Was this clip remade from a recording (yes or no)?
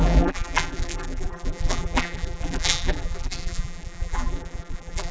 yes